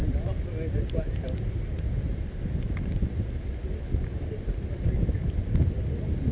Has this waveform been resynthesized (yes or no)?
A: no